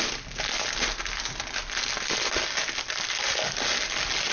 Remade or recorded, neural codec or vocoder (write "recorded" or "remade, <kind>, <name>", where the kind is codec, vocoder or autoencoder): recorded